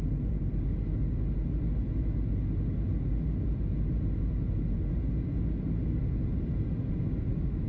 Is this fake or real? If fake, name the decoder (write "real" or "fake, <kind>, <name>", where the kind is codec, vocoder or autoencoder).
real